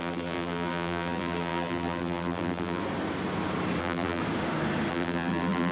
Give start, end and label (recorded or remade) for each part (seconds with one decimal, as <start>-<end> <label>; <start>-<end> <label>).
0.0-2.8 remade; 2.8-3.8 recorded; 3.8-4.2 remade; 4.2-4.9 recorded; 4.9-5.7 remade